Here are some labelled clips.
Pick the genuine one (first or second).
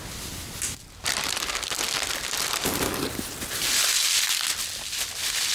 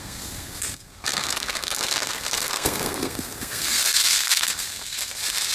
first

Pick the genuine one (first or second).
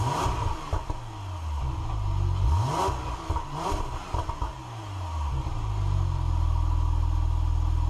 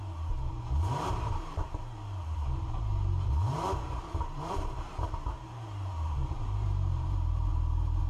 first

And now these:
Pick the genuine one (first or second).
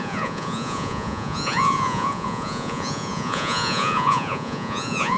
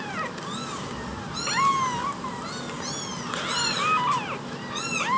second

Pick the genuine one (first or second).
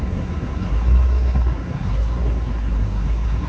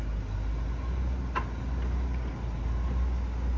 second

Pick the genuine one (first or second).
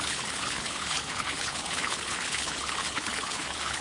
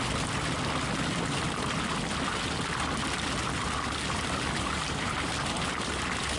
second